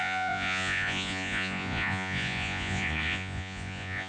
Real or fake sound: fake